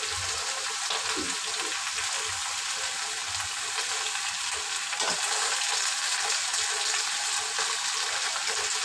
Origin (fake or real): real